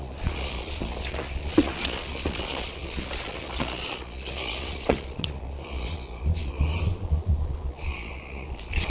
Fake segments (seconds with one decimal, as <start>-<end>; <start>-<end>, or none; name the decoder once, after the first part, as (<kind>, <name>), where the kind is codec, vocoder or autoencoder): 0.0-8.9 (vocoder, Vocos)